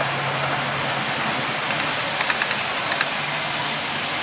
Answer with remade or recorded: recorded